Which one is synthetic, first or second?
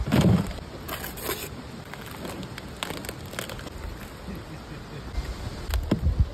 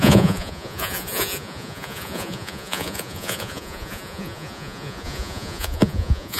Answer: second